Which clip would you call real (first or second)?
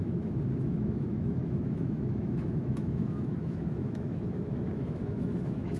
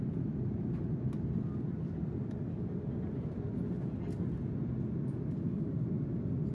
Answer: second